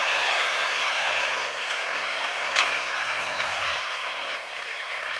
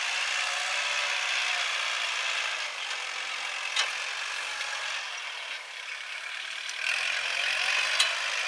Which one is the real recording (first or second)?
second